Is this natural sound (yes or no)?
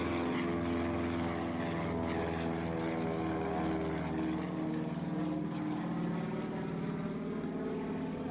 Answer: yes